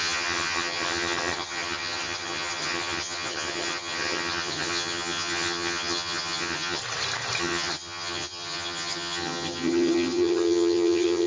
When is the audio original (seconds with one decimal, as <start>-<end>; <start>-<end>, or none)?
6.8-7.4